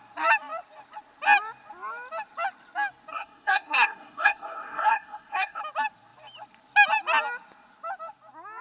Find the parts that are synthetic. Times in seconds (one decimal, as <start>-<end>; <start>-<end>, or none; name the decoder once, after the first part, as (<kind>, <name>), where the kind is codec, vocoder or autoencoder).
3.1-5.6 (codec, SNAC)